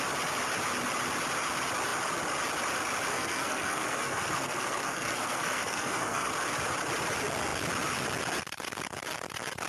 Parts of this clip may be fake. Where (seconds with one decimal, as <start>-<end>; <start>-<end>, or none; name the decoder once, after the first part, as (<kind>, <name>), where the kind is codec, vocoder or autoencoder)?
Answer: 3.1-6.3 (codec, SNAC)